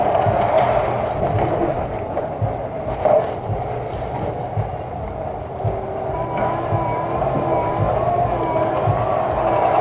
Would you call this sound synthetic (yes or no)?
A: no